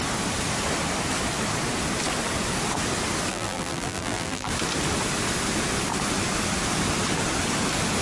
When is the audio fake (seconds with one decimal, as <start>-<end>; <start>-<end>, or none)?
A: 3.3-4.5